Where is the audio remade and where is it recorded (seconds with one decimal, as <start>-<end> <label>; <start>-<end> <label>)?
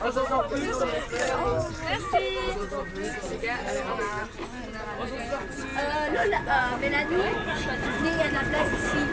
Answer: 0.0-9.1 recorded